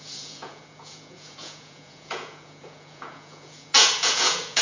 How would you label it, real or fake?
fake